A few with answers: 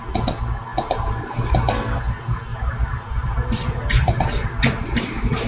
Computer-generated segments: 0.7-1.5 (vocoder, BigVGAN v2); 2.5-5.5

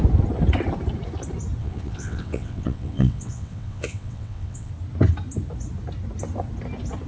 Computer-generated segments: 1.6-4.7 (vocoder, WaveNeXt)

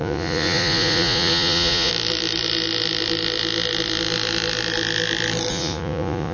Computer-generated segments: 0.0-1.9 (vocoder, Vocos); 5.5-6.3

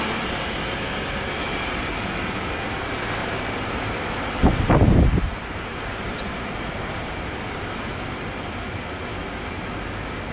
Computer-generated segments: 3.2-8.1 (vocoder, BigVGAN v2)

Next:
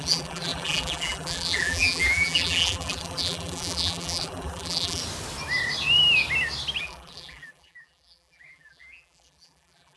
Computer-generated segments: 0.0-5.0 (vocoder, BigVGAN v2); 6.8-10.0

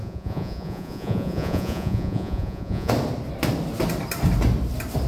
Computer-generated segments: 0.0-2.9 (vocoder, Vocos)

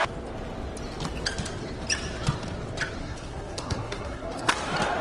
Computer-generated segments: 3.0-4.5 (codec, SNAC)